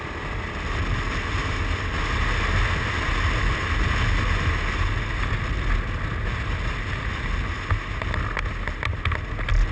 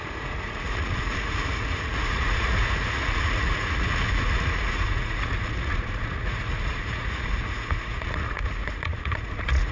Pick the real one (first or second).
first